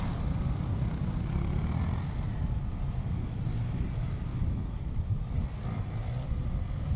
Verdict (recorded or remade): recorded